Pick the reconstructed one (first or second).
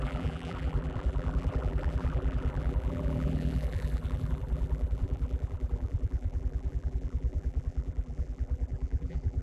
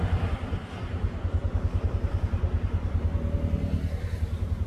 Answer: first